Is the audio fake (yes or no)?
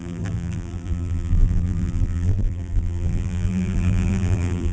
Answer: yes